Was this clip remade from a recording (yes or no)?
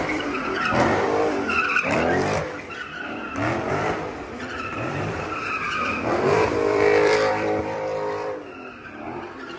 yes